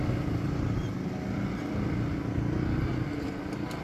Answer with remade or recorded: recorded